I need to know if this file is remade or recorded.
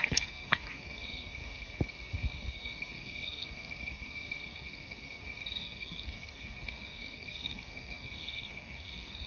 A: remade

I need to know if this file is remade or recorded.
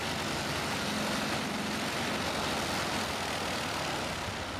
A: recorded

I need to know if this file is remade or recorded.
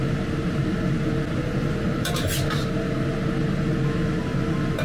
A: recorded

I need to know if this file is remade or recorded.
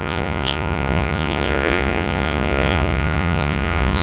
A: remade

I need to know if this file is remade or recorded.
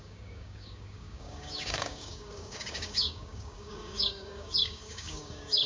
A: remade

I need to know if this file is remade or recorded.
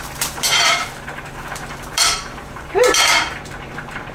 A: remade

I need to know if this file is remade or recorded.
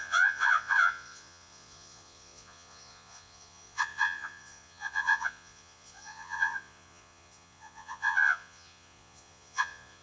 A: remade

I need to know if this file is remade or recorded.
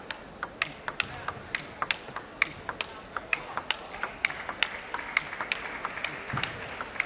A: recorded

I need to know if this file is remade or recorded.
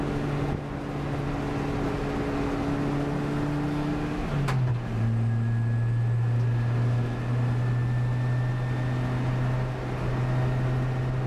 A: recorded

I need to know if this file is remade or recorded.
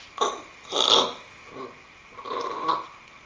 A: recorded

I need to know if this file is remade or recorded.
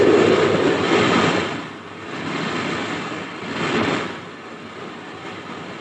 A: recorded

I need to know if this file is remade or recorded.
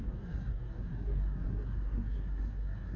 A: remade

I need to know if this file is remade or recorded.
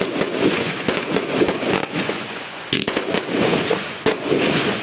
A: remade